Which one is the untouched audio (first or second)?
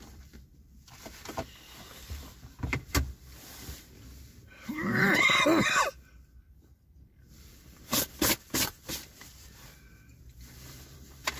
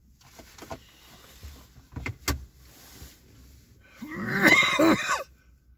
second